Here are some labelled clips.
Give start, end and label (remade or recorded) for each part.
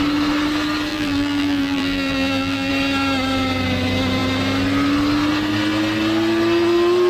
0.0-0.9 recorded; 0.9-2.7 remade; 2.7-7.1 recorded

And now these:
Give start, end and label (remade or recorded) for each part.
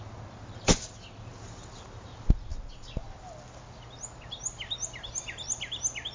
0.0-6.1 recorded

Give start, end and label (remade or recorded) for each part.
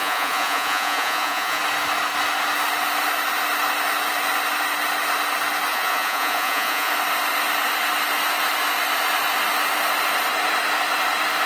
0.0-1.6 remade; 1.6-5.7 recorded; 5.7-6.9 remade; 6.9-11.5 recorded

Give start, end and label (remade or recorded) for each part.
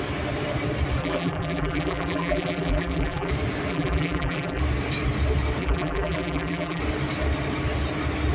0.0-1.0 recorded; 1.0-3.3 remade; 3.3-3.7 recorded; 3.7-4.6 remade; 4.6-5.6 recorded; 5.6-6.8 remade; 6.8-8.3 recorded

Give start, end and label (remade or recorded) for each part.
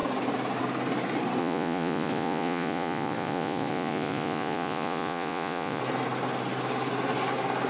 0.0-1.4 recorded; 1.4-5.8 remade; 5.8-7.7 recorded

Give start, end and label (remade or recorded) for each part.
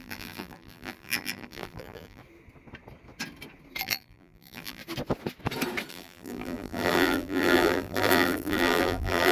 0.0-2.2 remade; 2.2-3.8 recorded; 3.8-4.8 remade; 4.8-5.9 recorded; 5.9-9.3 remade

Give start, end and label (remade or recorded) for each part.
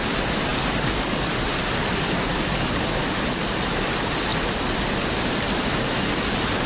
0.0-6.7 recorded